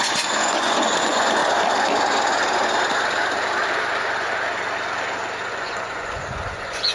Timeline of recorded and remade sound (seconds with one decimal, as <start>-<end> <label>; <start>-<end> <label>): 0.0-1.4 remade; 1.4-5.5 recorded; 5.5-6.9 remade